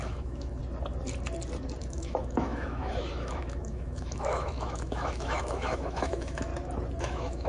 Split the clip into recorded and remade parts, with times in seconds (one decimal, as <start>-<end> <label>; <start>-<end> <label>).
0.0-0.6 remade; 0.6-1.8 recorded; 1.8-6.5 remade; 6.5-7.0 recorded; 7.0-7.5 remade